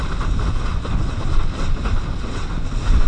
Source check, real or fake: real